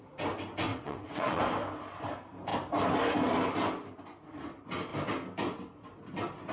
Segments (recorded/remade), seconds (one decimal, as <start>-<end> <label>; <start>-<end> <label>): 0.0-0.7 recorded; 0.7-1.4 remade; 1.4-6.5 recorded